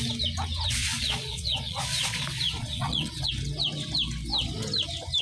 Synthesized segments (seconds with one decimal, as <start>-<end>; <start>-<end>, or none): 0.8-3.3